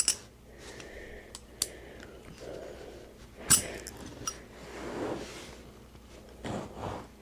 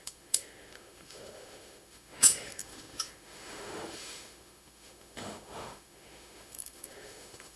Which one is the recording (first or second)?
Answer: first